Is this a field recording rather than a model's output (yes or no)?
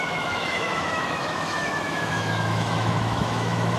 no